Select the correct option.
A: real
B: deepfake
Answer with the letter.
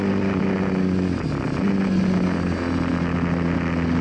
A